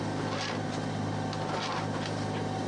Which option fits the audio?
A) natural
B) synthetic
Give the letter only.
A